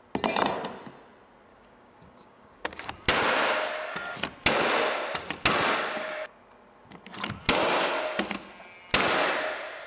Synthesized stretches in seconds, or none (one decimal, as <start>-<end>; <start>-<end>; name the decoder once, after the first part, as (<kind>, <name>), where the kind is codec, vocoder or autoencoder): 1.5-2.9 (codec, DAC)